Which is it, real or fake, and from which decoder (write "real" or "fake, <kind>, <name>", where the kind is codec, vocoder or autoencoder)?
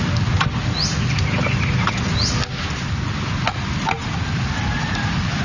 real